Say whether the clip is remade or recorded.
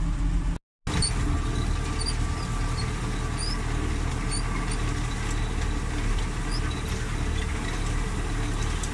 recorded